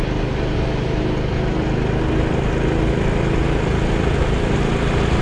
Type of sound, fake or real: fake